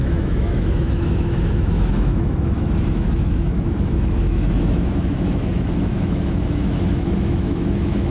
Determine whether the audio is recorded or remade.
remade